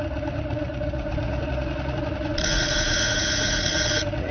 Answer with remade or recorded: remade